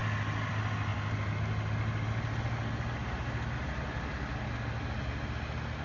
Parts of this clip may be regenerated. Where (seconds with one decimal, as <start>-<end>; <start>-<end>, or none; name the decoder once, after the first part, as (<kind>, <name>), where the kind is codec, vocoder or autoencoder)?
none